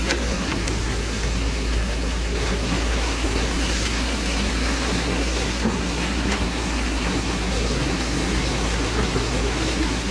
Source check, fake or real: fake